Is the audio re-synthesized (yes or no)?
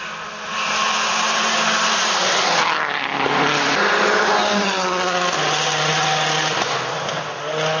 no